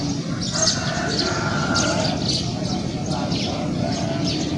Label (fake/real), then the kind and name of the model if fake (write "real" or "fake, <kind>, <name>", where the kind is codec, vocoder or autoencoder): real